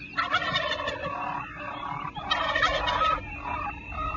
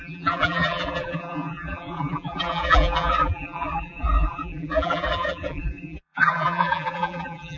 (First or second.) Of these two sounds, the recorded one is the first